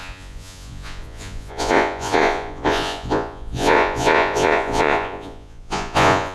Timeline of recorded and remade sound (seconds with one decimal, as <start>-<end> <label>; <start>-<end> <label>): 0.0-6.3 remade